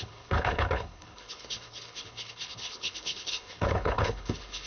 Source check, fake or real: fake